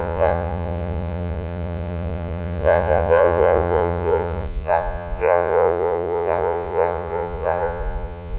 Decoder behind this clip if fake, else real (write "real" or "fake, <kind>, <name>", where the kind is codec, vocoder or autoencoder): fake, vocoder, Vocos